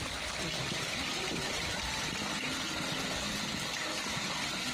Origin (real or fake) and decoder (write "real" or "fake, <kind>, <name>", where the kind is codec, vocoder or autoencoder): fake, vocoder, BigVGAN v2